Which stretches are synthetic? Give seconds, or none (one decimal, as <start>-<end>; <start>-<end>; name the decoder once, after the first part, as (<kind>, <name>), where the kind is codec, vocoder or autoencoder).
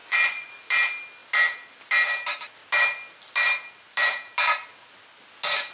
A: 0.0-0.6 (vocoder, Vocos)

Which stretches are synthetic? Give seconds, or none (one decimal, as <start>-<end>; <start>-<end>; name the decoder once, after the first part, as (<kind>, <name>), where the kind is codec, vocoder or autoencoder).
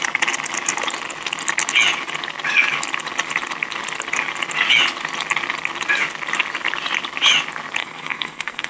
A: 7.8-8.7 (codec, SNAC)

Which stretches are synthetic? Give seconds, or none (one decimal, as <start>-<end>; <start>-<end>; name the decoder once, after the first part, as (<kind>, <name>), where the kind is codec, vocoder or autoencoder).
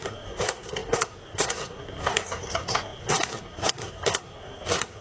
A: 0.0-5.0 (codec, SNAC)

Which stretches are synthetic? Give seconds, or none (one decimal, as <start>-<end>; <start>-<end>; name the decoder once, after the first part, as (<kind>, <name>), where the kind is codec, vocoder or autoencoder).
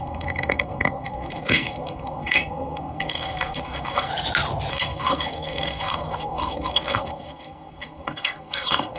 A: 0.0-4.1 (codec, SNAC); 4.7-9.0